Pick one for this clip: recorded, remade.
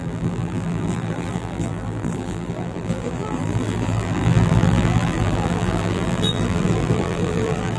remade